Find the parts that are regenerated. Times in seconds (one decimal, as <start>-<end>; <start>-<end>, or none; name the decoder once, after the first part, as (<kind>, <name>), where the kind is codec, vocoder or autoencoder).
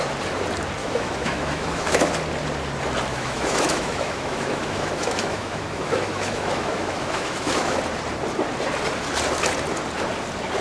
0.8-2.1 (autoencoder, DAC-VAE); 3.1-7.8